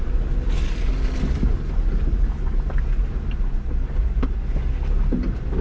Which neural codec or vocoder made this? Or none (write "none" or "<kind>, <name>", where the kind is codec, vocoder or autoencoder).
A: none